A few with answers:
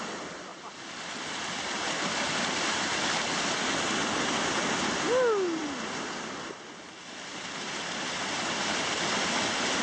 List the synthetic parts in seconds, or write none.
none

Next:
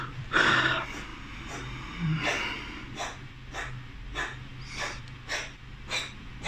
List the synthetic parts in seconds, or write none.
none

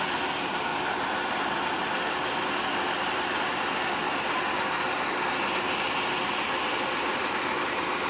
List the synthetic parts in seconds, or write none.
none

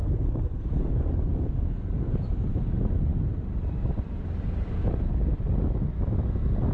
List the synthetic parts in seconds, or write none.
0.0-2.5 (vocoder, BigVGAN v2)

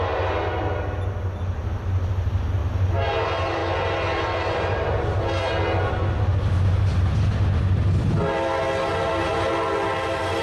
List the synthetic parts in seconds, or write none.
none